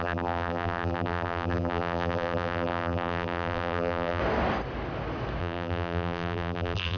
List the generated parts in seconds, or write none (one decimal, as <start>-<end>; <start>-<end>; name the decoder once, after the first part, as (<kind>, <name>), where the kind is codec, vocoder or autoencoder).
0.0-4.2 (vocoder, BigVGAN v2); 5.4-7.0